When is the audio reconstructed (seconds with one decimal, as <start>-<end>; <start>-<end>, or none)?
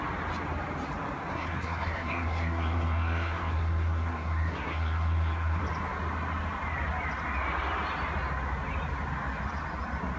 1.3-5.6